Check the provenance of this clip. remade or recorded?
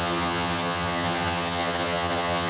remade